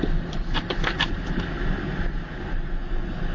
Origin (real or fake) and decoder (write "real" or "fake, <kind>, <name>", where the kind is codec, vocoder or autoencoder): real